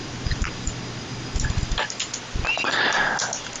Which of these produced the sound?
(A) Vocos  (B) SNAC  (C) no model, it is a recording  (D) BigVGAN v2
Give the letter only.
C